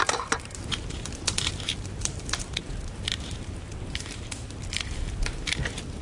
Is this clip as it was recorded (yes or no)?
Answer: no